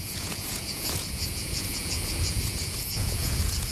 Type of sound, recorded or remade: remade